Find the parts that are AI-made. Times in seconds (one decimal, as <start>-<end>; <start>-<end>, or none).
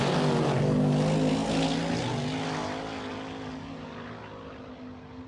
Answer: none